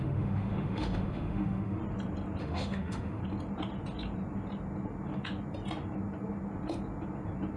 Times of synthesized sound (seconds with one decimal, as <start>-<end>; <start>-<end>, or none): 0.0-1.8; 2.4-3.2